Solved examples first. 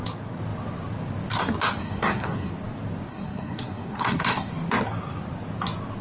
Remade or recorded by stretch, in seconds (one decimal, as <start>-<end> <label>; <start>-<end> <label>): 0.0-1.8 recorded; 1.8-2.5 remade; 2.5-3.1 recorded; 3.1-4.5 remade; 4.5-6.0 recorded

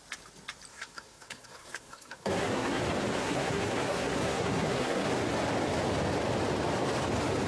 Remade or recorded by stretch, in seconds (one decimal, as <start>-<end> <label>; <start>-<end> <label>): 0.0-0.7 recorded; 0.7-2.8 remade; 2.8-3.2 recorded; 3.2-5.1 remade; 5.1-7.5 recorded

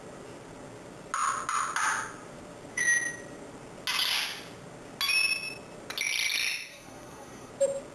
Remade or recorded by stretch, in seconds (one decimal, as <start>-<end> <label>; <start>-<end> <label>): 0.0-6.7 recorded; 6.7-7.5 remade; 7.5-7.9 recorded